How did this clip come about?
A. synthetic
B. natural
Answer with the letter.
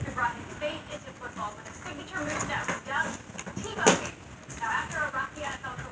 B